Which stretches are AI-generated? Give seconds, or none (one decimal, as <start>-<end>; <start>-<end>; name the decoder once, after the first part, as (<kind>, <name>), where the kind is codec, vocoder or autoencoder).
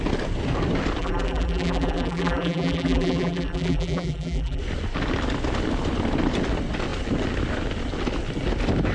1.0-4.6 (vocoder, BigVGAN v2)